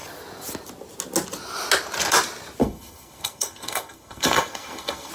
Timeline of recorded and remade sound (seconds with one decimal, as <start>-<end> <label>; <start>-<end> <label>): 0.0-2.6 recorded; 2.6-5.1 remade